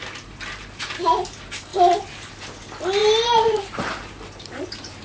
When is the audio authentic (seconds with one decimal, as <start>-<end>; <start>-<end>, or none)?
0.0-1.7; 2.3-3.0; 4.6-5.0